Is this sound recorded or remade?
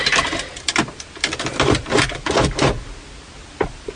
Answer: recorded